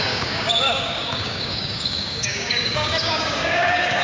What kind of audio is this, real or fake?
fake